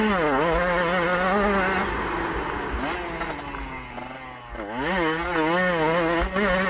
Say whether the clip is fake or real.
real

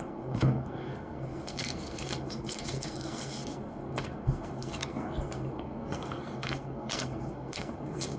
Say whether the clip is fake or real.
fake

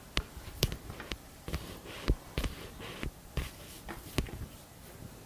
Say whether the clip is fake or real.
real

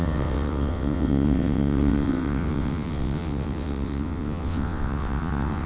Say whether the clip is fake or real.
fake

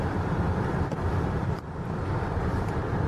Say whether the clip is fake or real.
fake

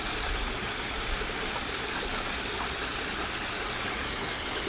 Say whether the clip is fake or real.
real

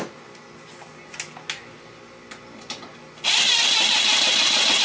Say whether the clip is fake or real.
real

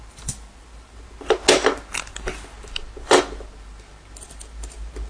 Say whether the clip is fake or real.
real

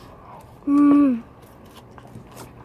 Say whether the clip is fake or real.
real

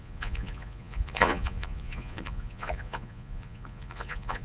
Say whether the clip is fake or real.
fake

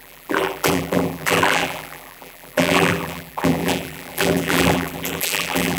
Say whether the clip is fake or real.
fake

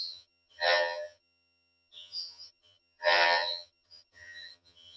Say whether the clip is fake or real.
fake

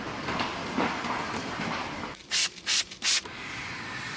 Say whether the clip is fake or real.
real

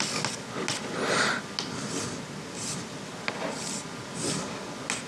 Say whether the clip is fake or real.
real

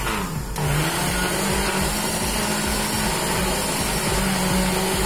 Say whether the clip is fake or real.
real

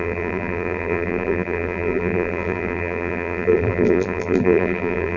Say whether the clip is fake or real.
fake